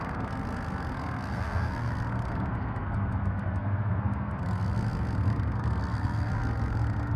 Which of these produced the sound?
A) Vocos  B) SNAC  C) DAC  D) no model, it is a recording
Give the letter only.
B